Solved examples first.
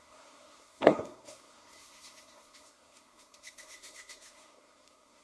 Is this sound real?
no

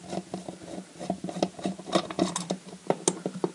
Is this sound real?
yes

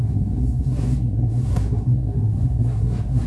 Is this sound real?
no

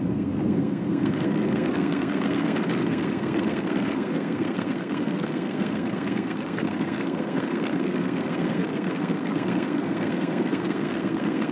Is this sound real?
no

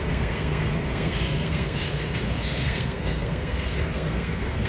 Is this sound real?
no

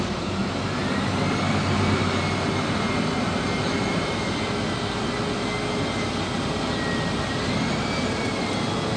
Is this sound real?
yes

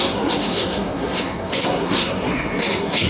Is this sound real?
no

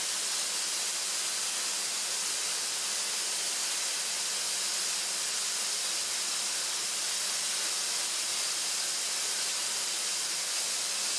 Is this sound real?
yes